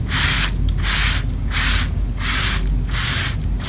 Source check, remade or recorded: recorded